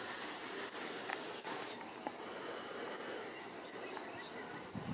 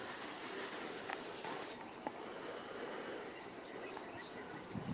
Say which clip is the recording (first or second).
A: first